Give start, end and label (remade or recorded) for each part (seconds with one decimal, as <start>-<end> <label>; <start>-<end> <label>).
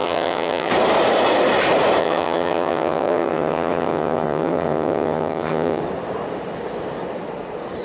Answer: 0.0-0.7 remade; 0.7-2.0 recorded; 2.0-5.8 remade; 5.8-7.8 recorded